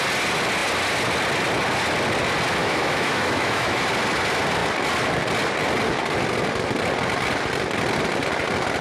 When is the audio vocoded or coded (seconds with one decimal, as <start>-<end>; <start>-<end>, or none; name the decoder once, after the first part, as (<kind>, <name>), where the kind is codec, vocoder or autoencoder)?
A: 2.6-3.8 (autoencoder, DAC-VAE)